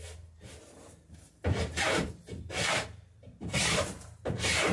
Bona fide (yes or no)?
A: no